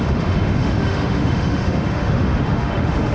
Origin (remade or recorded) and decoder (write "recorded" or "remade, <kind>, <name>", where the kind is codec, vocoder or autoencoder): remade, autoencoder, DAC-VAE